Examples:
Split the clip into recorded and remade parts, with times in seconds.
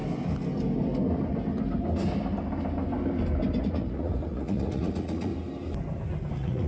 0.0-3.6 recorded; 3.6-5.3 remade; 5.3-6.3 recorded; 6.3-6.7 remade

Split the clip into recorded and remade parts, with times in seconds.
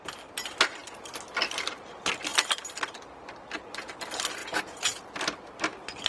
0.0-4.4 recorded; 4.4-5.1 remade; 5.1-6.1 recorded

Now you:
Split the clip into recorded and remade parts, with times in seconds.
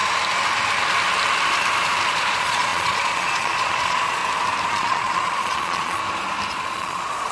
0.0-2.1 recorded; 2.1-4.2 remade; 4.2-4.7 recorded; 4.7-6.0 remade; 6.0-6.5 recorded; 6.5-7.3 remade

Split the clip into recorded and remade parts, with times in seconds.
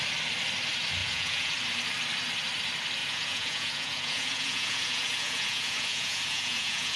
0.0-1.0 recorded; 1.0-1.5 remade; 1.5-3.0 recorded; 3.0-7.0 remade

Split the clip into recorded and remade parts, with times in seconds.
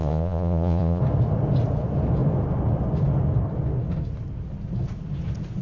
0.0-1.0 remade; 1.0-5.6 recorded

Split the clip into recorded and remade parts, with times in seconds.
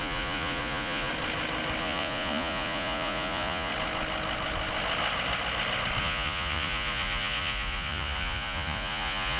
0.0-1.1 remade; 1.1-1.8 recorded; 1.8-3.7 remade; 3.7-6.0 recorded; 6.0-9.4 remade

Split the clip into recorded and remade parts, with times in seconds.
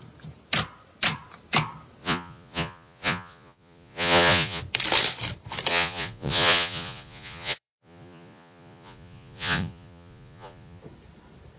0.0-2.0 recorded; 2.0-4.6 remade; 4.6-5.7 recorded; 5.7-10.8 remade; 10.8-11.6 recorded